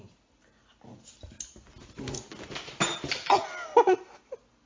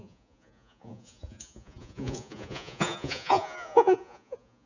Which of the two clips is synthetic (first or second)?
second